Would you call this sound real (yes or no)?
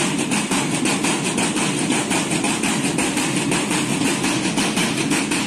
yes